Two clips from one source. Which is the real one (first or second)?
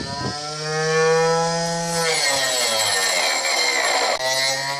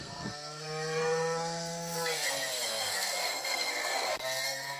first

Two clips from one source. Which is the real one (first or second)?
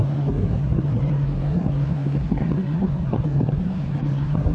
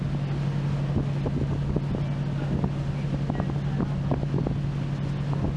second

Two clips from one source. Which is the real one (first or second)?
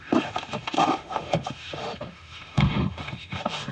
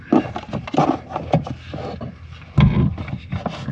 second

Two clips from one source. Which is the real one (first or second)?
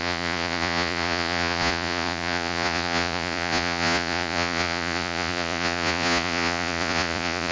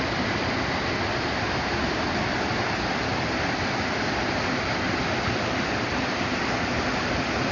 second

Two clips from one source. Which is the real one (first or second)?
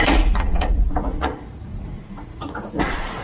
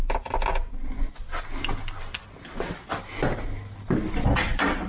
second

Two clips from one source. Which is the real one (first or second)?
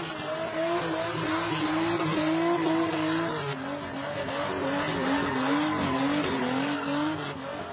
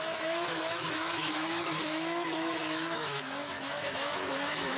first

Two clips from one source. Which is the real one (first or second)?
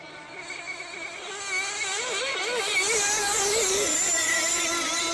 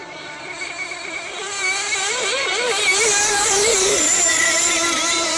first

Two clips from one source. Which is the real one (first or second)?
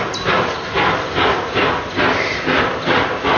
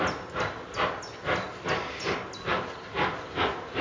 second